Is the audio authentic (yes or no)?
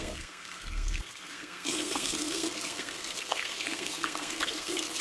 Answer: no